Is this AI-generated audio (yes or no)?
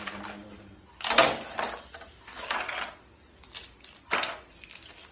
no